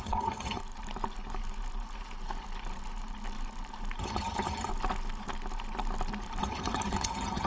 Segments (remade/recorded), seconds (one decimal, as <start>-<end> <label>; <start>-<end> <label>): 0.0-0.6 remade; 0.6-4.0 recorded; 4.0-4.7 remade; 4.7-6.4 recorded; 6.4-7.5 remade